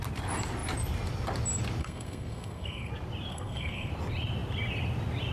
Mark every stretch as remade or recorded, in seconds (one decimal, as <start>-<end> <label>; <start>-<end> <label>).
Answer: 0.0-1.8 recorded; 1.8-2.9 remade; 2.9-3.3 recorded; 3.3-3.9 remade; 3.9-5.3 recorded